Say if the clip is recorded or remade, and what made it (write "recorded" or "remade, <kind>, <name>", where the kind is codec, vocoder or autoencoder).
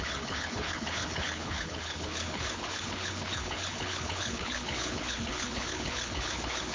remade, codec, HILCodec